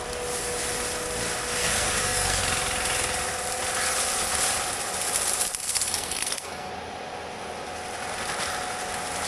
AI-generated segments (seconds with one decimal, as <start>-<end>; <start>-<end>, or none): 1.6-2.4; 5.6-6.7